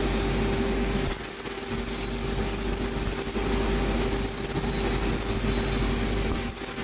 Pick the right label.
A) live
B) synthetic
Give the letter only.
A